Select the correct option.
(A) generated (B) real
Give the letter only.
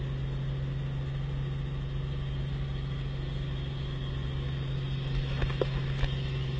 B